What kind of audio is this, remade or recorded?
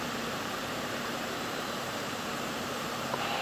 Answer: remade